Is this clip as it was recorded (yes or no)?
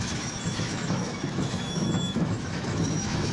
no